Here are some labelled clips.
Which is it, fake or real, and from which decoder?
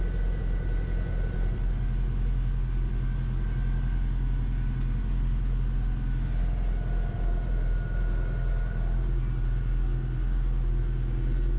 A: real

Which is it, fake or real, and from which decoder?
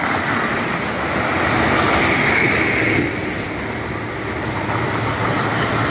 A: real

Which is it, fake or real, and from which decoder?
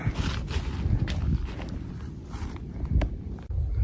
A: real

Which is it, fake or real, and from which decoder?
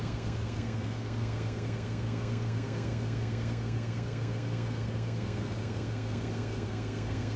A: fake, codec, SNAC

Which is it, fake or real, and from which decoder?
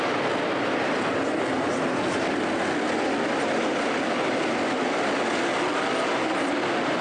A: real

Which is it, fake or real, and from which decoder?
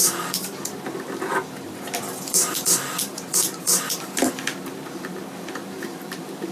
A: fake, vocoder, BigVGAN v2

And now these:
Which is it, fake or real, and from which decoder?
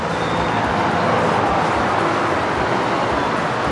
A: real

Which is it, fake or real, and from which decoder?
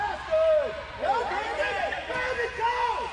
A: real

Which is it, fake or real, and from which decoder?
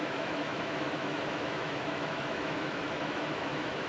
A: fake, autoencoder, DAC-VAE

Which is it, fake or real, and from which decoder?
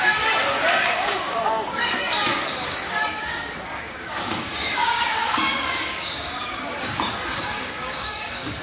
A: fake, codec, DAC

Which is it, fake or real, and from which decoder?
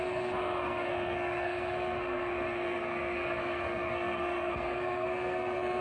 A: fake, codec, SNAC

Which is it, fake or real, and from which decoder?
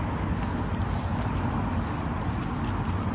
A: real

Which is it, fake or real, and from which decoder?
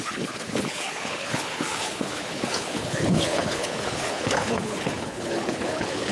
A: fake, codec, HILCodec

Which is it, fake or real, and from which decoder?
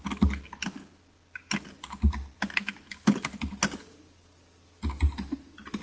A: real